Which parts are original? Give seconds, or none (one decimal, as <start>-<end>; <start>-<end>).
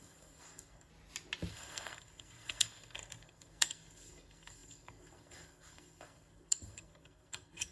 0.9-1.5